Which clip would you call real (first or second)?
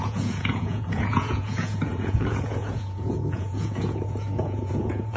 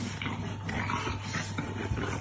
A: second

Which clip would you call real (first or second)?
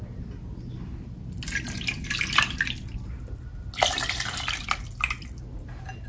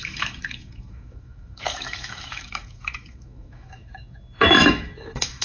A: first